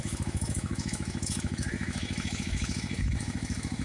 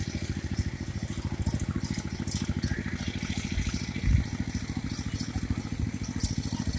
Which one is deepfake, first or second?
first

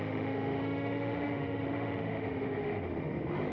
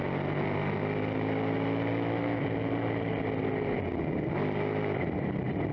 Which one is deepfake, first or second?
first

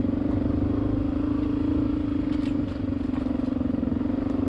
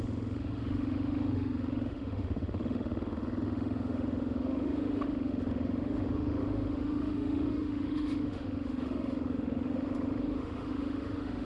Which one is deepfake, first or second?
second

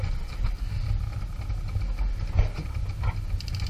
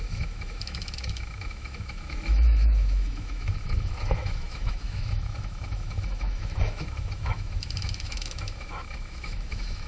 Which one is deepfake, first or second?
second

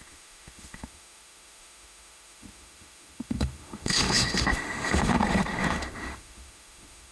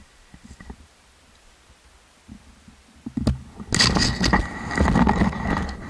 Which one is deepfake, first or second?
first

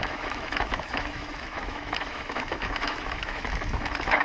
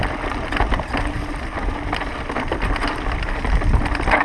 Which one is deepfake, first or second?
first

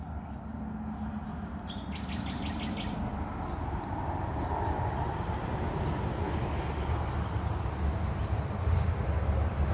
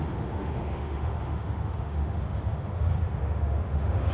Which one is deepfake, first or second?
second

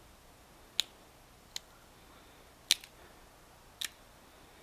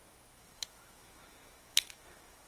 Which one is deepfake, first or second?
second